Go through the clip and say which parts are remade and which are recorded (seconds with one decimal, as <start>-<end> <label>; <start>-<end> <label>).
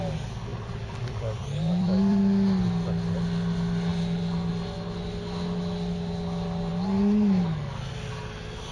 0.0-0.5 recorded; 0.5-2.2 remade; 2.2-8.7 recorded